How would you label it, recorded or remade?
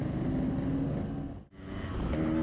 recorded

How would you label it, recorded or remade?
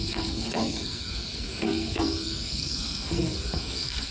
remade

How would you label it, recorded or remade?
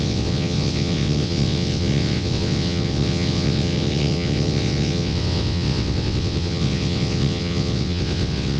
remade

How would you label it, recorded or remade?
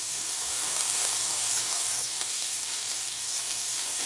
remade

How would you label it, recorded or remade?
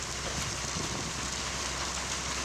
recorded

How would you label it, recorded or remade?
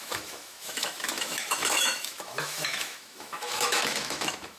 remade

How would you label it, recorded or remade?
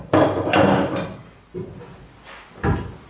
recorded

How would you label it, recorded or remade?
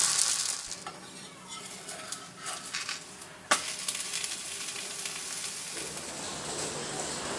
recorded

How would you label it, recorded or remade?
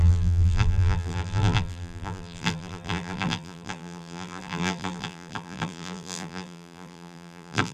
remade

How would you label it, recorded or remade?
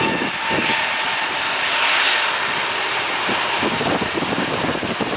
recorded